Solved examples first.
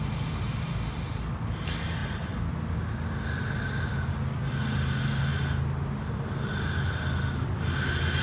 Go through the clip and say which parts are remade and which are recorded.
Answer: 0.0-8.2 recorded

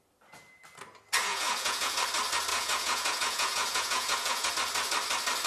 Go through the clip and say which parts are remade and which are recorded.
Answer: 0.0-1.3 recorded; 1.3-2.0 remade; 2.0-2.5 recorded; 2.5-4.5 remade; 4.5-5.5 recorded

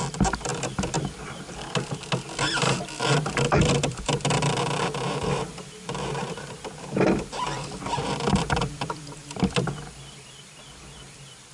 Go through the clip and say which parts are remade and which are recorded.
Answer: 0.0-0.5 remade; 0.5-3.4 recorded; 3.4-11.5 remade

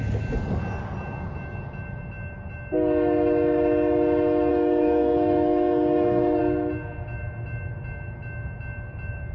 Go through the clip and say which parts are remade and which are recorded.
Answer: 0.0-4.5 recorded; 4.5-6.4 remade; 6.4-9.3 recorded

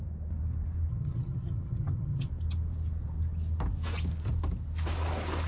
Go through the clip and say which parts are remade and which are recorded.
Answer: 0.0-0.9 recorded; 0.9-2.3 remade; 2.3-5.5 recorded

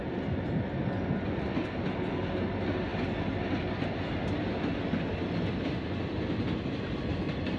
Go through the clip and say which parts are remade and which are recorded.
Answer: 0.0-7.6 recorded